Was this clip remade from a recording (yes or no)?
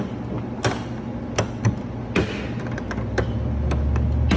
no